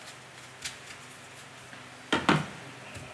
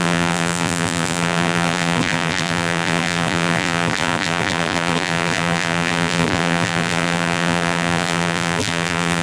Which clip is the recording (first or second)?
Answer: first